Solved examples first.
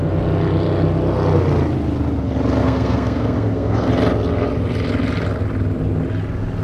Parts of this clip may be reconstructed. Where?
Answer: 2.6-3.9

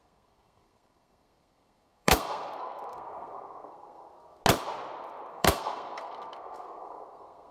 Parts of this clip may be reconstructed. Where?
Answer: 0.0-4.4; 5.3-7.5

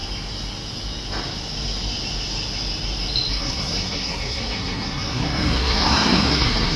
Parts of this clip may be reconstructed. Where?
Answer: 3.3-6.8